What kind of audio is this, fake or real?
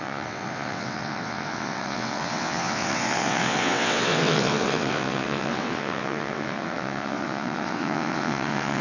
fake